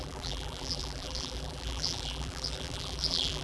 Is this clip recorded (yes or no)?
no